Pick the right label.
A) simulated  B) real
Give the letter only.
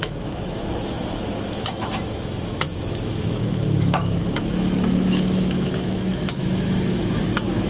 A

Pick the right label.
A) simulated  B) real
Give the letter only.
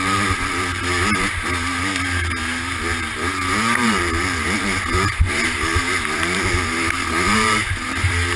A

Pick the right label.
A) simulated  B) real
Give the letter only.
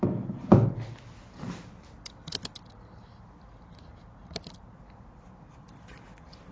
B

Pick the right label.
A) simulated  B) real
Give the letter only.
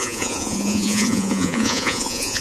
A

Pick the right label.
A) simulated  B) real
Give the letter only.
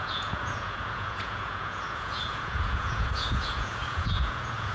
A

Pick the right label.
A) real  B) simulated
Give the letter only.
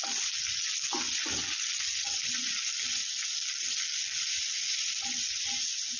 A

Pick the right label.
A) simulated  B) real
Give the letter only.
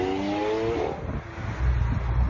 B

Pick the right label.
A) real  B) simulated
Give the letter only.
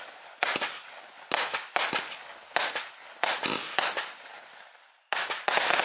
A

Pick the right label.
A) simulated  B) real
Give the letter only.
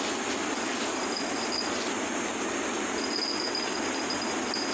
B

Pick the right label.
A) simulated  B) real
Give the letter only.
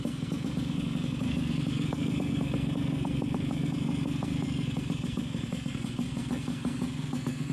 A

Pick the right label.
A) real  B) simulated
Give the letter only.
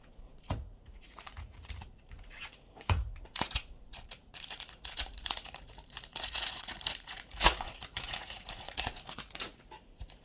B